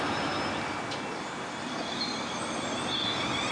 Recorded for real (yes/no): no